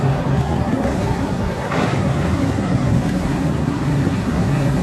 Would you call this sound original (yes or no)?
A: no